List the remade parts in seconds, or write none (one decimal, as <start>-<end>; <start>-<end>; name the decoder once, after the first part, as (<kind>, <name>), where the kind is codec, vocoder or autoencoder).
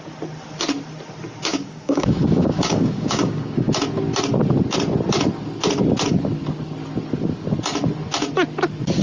1.5-3.7 (codec, DAC)